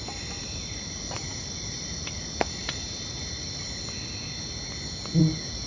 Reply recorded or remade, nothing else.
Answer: recorded